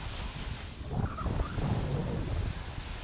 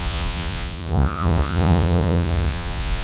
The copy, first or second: second